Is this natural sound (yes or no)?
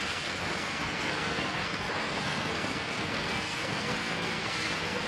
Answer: no